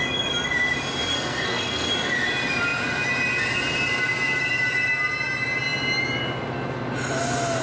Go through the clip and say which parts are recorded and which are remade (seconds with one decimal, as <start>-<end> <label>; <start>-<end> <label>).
0.0-1.1 recorded; 1.1-1.9 remade; 1.9-7.6 recorded